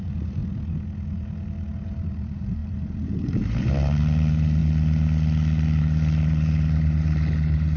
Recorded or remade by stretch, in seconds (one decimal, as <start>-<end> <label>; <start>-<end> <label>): 0.0-0.4 remade; 0.4-1.7 recorded; 1.7-4.6 remade; 4.6-5.8 recorded; 5.8-7.8 remade